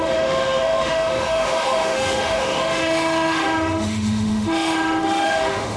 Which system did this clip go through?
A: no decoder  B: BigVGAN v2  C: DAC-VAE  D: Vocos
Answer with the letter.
C